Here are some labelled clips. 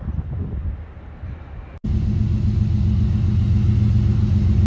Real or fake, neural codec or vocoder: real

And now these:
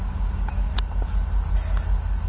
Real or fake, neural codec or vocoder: real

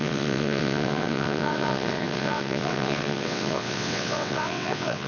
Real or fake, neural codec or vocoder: fake, vocoder, WaveNeXt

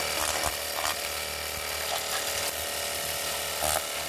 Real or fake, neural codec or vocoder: real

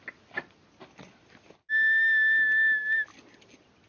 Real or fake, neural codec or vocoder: real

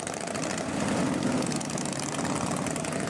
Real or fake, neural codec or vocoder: real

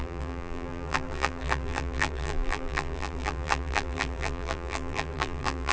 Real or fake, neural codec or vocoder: fake, vocoder, BigVGAN v2